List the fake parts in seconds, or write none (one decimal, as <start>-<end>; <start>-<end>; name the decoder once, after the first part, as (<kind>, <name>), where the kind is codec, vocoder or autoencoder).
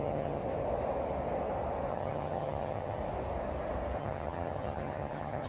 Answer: 0.0-0.4 (vocoder, HiFi-GAN); 1.9-3.0; 4.0-5.5